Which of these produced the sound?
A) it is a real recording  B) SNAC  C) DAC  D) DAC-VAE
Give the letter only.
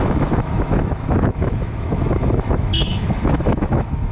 D